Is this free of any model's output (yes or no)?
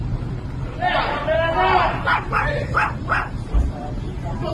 no